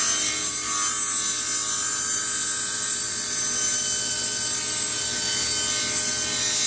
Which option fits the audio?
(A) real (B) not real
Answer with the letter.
A